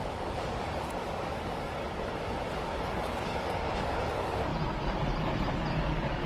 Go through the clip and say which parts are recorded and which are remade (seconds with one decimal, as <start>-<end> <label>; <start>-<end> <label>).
0.0-4.5 remade; 4.5-5.7 recorded; 5.7-6.3 remade